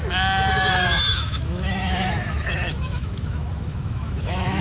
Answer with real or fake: fake